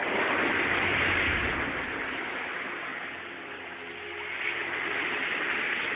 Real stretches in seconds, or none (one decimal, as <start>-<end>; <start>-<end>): 0.0-6.0